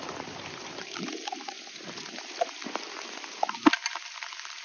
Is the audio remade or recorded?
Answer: remade